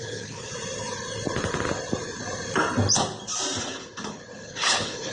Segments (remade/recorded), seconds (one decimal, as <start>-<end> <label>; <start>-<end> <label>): 0.0-0.5 remade; 0.5-3.6 recorded; 3.6-5.1 remade